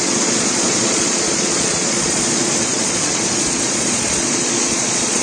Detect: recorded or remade remade